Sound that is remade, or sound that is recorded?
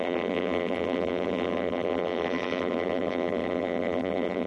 remade